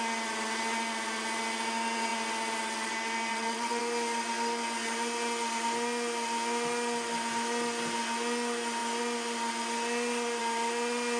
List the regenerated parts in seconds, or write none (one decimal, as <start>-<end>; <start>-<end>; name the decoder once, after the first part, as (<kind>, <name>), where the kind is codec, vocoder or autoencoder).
3.3-3.8 (vocoder, WaveNeXt)